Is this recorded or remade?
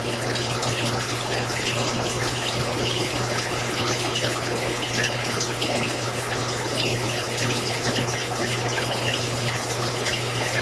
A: remade